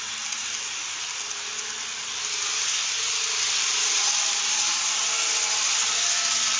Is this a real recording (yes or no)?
yes